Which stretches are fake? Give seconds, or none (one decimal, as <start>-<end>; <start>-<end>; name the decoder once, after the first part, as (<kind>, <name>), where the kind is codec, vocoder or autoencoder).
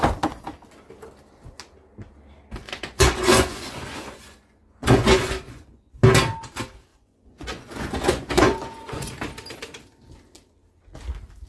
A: 2.6-5.9 (vocoder, Vocos); 6.9-9.1